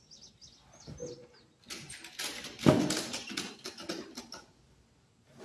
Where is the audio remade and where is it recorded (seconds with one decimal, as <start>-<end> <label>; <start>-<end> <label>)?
0.0-5.4 recorded